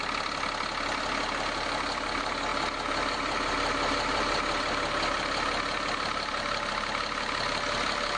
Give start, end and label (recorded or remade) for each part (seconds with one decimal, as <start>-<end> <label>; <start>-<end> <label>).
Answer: 0.0-8.2 recorded